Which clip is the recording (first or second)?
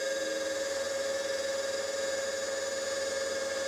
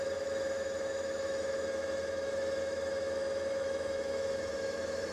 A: first